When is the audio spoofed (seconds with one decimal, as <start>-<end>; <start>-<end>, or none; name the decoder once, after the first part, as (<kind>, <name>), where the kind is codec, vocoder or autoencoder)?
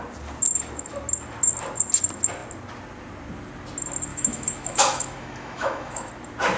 4.1-6.1 (autoencoder, DAC-VAE)